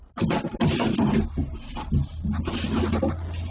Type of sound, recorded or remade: recorded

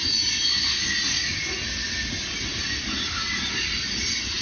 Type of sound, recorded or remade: recorded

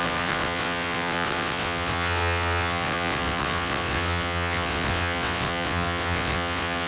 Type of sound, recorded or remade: remade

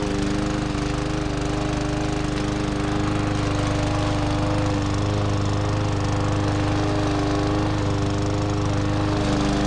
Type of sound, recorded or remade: recorded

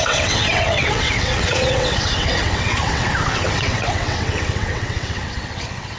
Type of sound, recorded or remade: remade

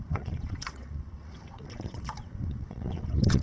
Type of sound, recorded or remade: remade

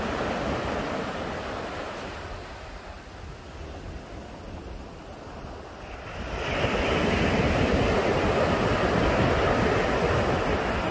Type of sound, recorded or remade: recorded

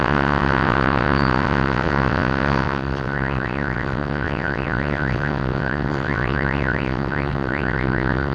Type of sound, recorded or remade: remade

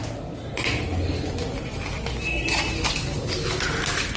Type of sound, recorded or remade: recorded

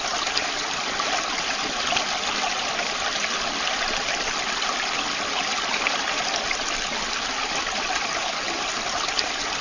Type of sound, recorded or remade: recorded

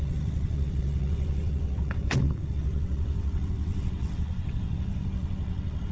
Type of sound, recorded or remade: remade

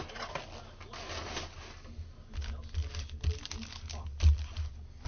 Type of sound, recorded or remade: recorded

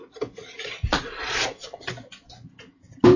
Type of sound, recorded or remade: recorded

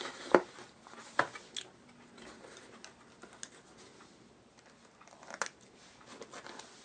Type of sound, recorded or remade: recorded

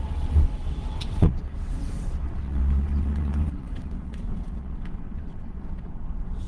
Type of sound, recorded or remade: remade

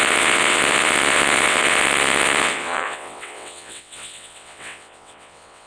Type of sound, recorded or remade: remade